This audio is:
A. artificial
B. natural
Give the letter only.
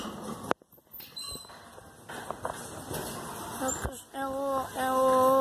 B